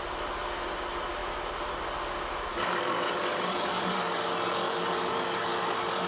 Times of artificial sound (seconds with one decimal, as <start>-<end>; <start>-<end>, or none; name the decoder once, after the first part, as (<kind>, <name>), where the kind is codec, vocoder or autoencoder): 2.5-6.1 (codec, DAC)